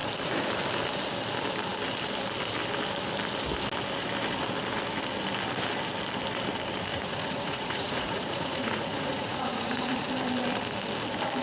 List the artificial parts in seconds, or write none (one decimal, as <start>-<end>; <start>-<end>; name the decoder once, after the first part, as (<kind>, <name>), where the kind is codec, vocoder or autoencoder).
6.9-10.1 (vocoder, Vocos)